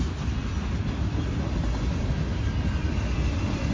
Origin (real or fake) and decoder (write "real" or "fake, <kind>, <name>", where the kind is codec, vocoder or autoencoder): real